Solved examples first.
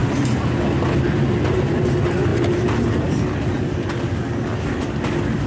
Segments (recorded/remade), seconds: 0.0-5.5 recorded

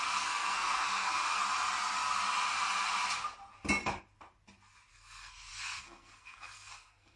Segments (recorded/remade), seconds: 0.0-1.4 remade; 1.4-4.9 recorded; 4.9-7.2 remade